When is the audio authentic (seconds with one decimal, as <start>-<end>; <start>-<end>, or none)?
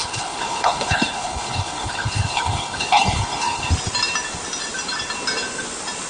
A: 3.7-6.1